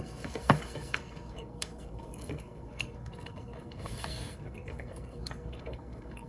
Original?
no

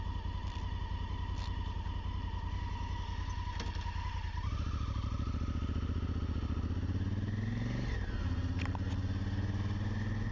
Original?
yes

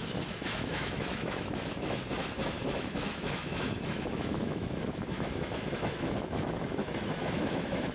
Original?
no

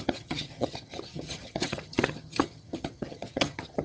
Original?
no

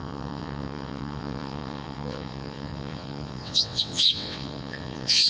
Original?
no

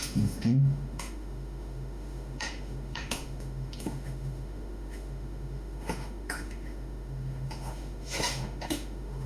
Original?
no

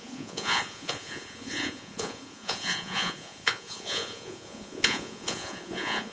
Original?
no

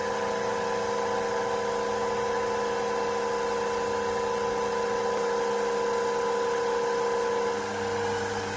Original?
yes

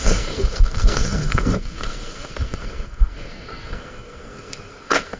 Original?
no